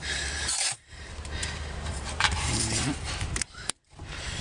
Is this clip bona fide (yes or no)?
no